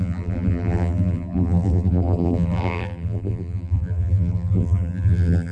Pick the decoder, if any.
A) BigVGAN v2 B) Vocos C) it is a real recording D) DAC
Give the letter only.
A